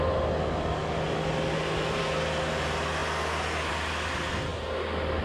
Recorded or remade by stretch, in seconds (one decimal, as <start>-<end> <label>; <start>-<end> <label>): 0.0-5.2 recorded

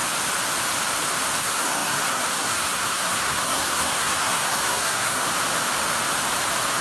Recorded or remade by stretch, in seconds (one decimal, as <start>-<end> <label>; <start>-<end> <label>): 0.0-1.4 recorded; 1.4-5.3 remade; 5.3-6.8 recorded

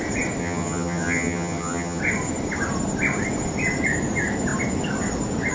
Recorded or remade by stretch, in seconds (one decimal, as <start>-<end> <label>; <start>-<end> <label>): 0.0-0.4 recorded; 0.4-2.0 remade; 2.0-5.5 recorded

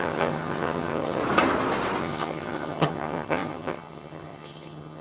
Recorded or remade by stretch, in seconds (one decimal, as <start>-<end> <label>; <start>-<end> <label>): 0.0-1.2 remade; 1.2-2.0 recorded; 2.0-5.0 remade

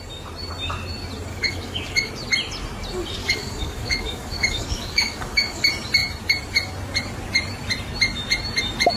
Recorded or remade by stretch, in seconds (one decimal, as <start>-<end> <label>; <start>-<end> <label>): 0.0-1.3 recorded; 1.3-2.1 remade; 2.1-3.2 recorded; 3.2-5.6 remade; 5.6-9.0 recorded

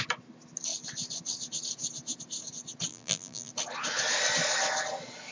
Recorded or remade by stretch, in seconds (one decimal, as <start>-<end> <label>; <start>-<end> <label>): 0.0-2.9 recorded; 2.9-3.5 remade; 3.5-5.3 recorded